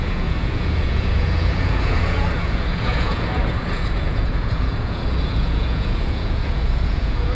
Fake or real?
fake